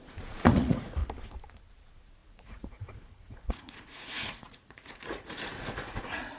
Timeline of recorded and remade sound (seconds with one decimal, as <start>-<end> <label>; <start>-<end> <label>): 0.0-1.0 remade; 1.0-1.7 recorded; 1.7-6.4 remade